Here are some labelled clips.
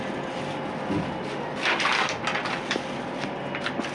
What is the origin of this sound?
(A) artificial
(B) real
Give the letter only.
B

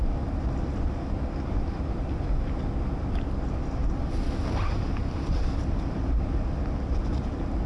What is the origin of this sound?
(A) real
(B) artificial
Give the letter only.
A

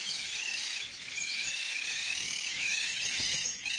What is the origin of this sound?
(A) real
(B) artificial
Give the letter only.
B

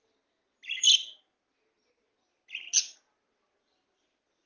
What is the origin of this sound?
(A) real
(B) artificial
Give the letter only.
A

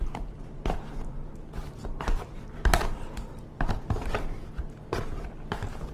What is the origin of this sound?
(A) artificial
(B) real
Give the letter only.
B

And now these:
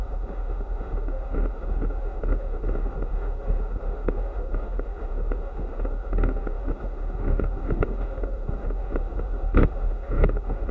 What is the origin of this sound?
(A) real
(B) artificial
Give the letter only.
B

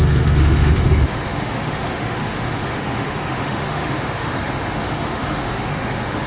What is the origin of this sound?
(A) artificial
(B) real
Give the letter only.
A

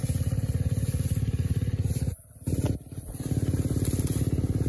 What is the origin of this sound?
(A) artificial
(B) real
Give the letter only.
B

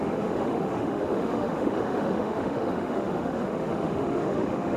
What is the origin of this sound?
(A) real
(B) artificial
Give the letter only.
B